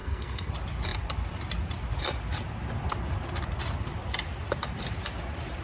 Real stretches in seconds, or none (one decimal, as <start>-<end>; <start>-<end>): 0.5-5.6